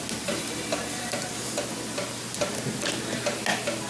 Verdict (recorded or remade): recorded